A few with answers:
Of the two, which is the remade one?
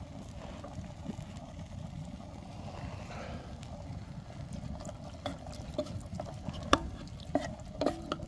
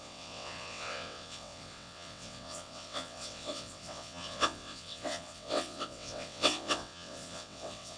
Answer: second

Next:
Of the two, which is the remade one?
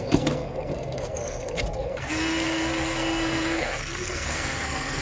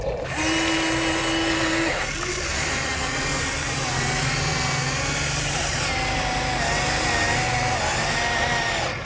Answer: first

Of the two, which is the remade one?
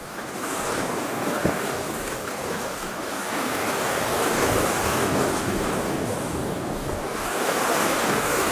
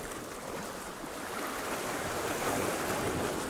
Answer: first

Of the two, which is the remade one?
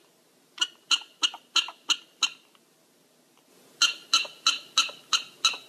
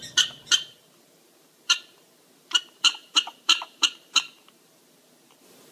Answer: second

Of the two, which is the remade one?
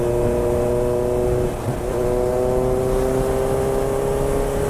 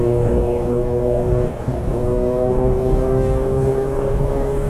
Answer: second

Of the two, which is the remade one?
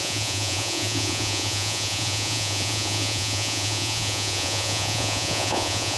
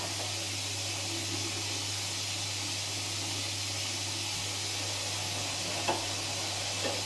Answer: first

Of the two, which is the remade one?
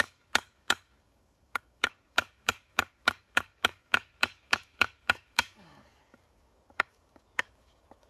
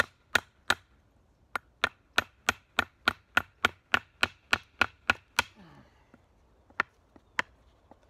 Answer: first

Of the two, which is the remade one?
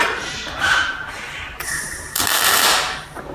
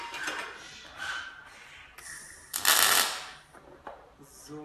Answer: first